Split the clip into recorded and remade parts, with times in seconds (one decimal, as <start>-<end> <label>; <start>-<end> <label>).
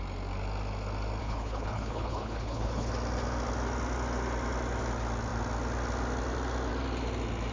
0.0-1.2 recorded; 1.2-2.9 remade; 2.9-7.5 recorded